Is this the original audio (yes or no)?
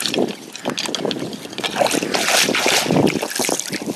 yes